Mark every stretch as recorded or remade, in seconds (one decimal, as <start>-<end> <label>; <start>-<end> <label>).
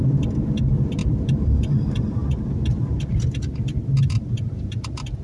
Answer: 0.0-1.0 recorded; 1.0-1.7 remade; 1.7-5.2 recorded